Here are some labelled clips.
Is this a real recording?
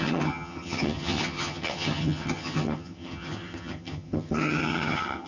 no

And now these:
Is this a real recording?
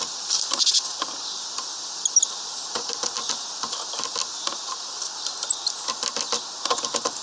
yes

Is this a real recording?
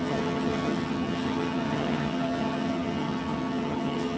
no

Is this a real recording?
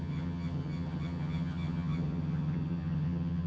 no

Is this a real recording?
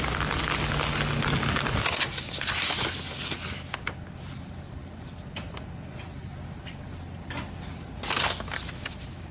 yes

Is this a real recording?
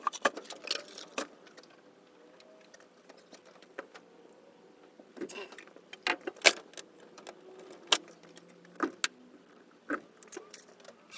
yes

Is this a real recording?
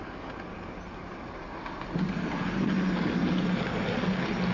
yes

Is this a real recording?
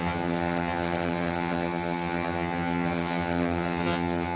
no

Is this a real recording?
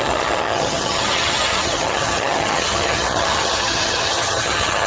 no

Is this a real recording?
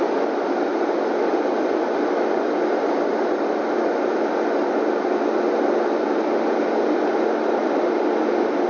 yes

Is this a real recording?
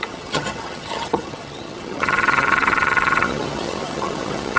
no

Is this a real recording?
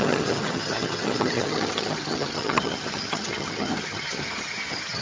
no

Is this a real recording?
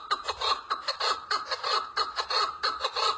yes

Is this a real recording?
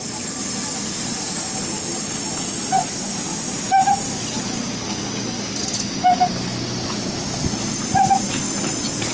yes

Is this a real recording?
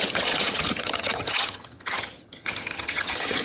no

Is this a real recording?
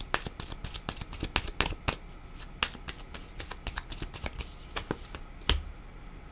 yes